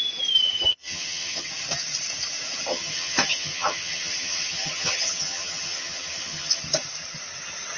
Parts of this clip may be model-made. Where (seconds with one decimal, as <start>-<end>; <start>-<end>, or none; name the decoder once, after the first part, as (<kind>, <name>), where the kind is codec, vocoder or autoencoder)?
0.7-1.5 (vocoder, HiFi-GAN); 2.7-6.6